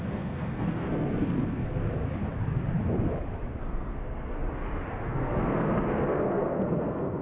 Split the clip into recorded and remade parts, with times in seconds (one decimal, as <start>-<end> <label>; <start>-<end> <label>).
0.0-1.8 remade; 1.8-3.6 recorded; 3.6-4.4 remade; 4.4-5.1 recorded; 5.1-7.2 remade